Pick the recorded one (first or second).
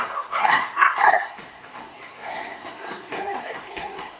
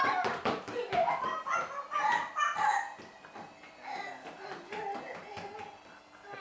second